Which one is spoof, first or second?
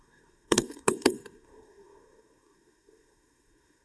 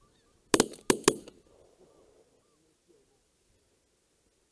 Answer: first